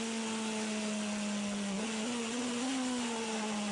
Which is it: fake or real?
real